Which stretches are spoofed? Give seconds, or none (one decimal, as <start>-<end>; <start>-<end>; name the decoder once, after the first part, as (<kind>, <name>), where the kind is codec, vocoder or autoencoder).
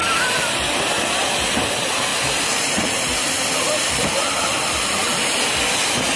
none